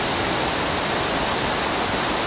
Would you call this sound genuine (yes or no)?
yes